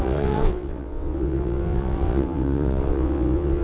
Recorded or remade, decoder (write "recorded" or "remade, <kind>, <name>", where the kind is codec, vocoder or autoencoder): remade, vocoder, WaveNeXt